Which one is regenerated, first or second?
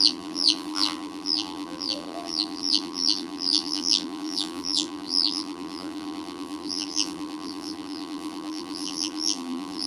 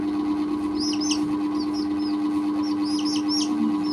first